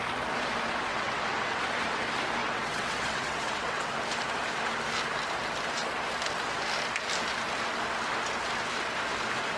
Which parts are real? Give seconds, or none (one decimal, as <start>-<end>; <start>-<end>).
0.0-0.9; 1.6-2.4; 3.9-9.6